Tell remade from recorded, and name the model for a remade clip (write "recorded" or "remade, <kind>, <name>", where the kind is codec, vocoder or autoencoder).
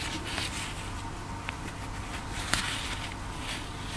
recorded